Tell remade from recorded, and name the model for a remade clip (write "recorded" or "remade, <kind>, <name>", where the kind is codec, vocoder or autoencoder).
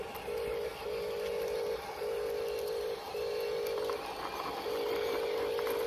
recorded